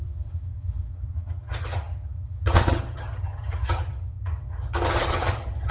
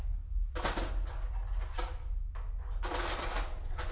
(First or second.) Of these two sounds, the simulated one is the first